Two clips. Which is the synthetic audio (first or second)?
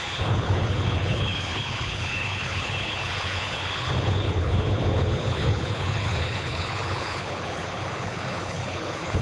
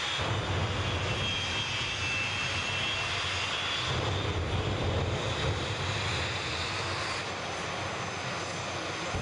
first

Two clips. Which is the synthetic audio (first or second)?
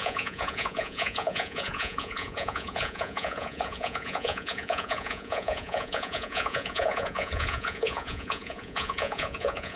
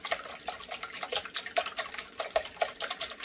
first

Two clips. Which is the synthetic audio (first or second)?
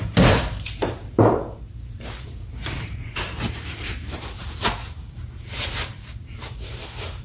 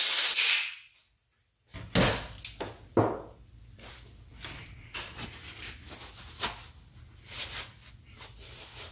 first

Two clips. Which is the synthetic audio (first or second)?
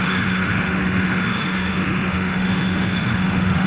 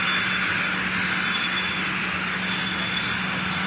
first